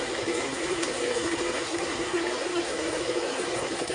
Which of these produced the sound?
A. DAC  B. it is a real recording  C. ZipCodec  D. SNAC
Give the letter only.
D